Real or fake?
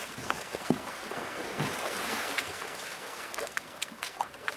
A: fake